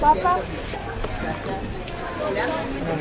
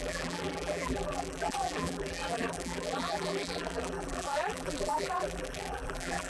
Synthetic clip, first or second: second